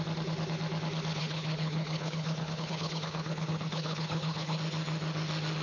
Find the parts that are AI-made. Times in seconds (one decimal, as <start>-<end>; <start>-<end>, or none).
1.2-4.6